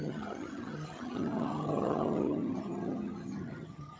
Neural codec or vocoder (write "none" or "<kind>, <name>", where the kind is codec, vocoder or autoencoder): vocoder, HiFi-GAN